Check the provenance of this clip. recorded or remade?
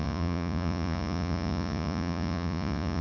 remade